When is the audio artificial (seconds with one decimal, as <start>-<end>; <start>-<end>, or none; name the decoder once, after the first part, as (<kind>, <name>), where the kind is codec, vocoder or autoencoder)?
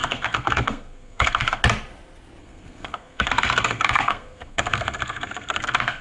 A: 0.0-1.6 (codec, SNAC); 2.4-6.0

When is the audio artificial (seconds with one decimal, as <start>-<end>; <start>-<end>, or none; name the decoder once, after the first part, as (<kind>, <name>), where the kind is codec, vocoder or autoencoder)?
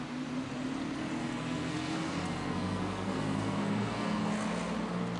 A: 1.2-4.3 (codec, SNAC)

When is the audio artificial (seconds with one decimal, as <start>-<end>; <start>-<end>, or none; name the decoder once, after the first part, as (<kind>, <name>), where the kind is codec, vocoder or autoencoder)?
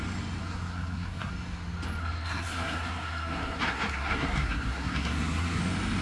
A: 0.4-1.3 (codec, SNAC); 2.0-5.6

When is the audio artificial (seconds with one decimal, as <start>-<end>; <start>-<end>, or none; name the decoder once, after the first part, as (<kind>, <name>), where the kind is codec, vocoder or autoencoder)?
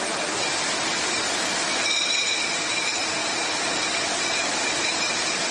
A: none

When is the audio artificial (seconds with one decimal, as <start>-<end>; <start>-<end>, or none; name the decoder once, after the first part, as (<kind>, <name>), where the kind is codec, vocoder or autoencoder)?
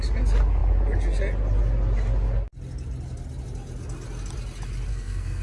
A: 4.9-5.4 (codec, SNAC)